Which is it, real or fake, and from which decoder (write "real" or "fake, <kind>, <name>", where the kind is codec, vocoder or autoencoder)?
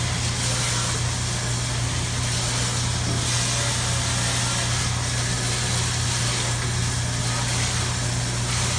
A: real